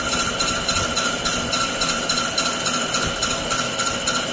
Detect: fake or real real